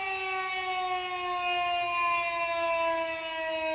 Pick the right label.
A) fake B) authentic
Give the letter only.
B